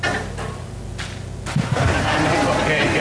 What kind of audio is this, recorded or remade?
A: recorded